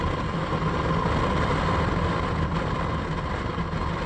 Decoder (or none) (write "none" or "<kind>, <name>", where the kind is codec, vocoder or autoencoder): none